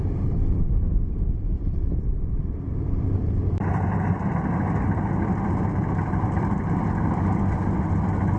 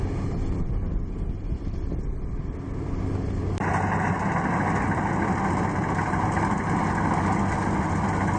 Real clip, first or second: second